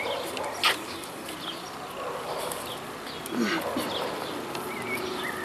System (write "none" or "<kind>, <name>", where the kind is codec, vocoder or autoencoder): none